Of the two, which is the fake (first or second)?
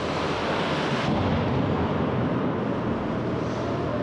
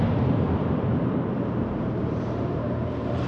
second